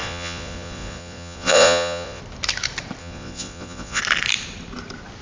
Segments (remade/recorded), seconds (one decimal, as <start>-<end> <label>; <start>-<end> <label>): 0.0-2.2 remade; 2.2-3.0 recorded; 3.0-4.0 remade; 4.0-5.2 recorded